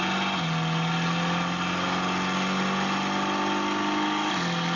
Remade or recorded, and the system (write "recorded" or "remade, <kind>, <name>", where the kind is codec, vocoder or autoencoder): recorded